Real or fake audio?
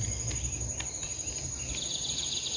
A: real